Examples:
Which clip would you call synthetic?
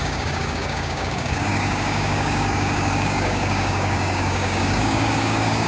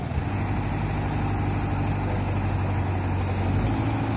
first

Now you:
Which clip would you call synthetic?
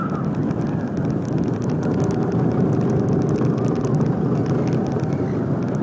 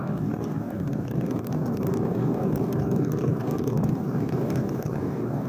second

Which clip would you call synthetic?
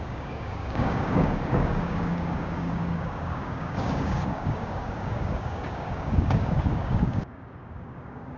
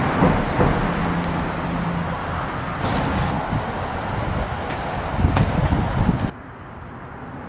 first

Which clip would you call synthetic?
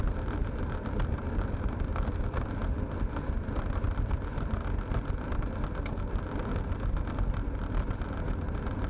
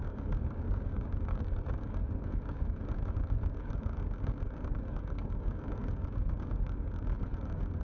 second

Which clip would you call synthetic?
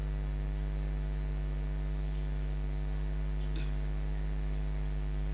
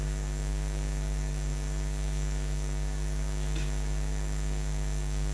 second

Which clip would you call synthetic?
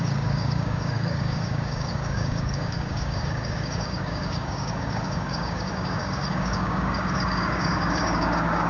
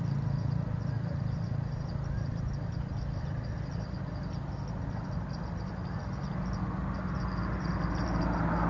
first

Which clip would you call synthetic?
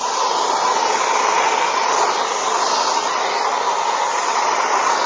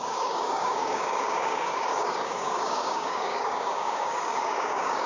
second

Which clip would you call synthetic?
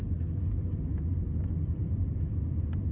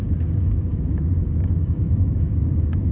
second